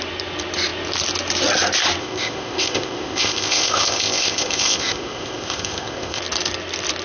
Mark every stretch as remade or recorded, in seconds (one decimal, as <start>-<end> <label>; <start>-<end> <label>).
0.0-2.0 recorded; 2.0-6.2 remade; 6.2-7.0 recorded